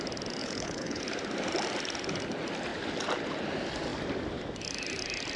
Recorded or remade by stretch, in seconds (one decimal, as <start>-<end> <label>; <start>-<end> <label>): 0.0-0.4 recorded; 0.4-1.0 remade; 1.0-5.4 recorded